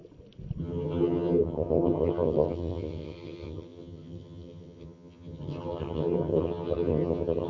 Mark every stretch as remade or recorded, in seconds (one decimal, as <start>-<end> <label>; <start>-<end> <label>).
0.0-0.6 recorded; 0.6-7.5 remade